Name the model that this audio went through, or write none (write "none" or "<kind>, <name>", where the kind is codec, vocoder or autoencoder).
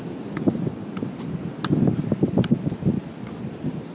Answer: none